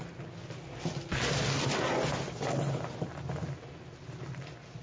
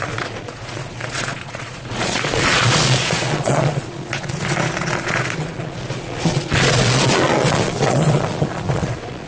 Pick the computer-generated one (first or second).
second